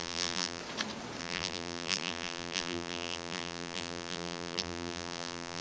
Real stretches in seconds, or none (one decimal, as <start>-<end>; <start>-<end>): 0.6-1.2